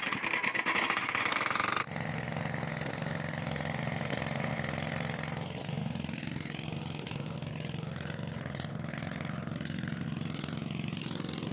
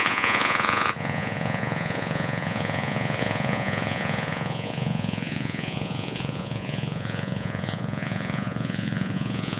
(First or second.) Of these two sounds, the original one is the first